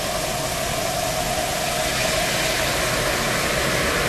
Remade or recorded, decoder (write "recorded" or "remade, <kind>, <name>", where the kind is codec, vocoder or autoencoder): recorded